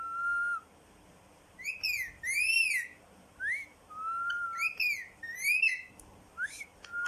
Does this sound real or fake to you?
real